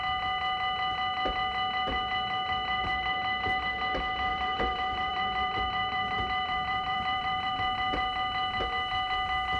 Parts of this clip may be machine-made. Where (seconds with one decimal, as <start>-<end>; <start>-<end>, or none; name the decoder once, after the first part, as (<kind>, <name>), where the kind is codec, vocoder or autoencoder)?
4.3-7.5 (vocoder, BigVGAN v2)